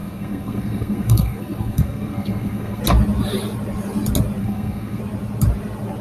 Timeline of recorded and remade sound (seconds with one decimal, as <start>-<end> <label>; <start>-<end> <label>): 0.0-2.8 remade; 2.8-4.4 recorded; 4.4-5.0 remade; 5.0-6.0 recorded